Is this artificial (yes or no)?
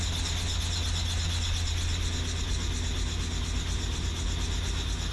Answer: no